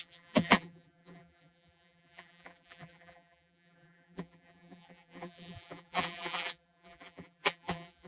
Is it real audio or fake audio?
fake